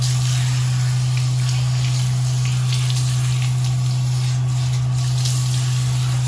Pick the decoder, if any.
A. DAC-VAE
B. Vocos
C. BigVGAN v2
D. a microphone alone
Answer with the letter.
D